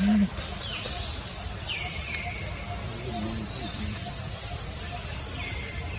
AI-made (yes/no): no